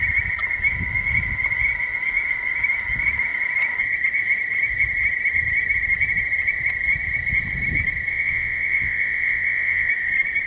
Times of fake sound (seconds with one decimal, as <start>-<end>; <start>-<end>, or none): 8.1-9.9